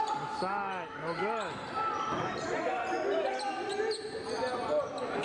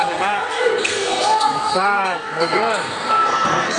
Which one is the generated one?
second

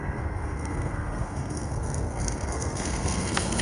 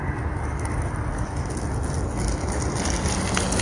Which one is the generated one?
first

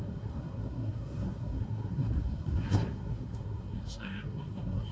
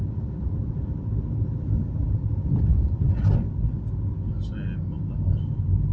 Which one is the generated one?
first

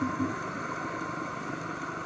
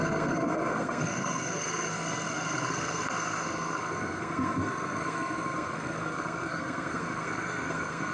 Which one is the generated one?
second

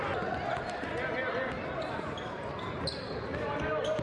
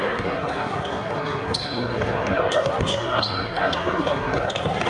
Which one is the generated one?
second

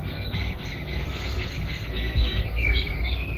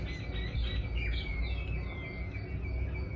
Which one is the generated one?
first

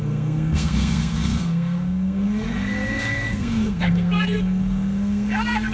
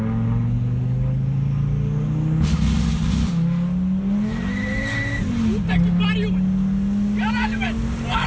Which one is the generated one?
first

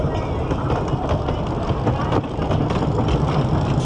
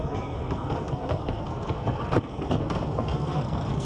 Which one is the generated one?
second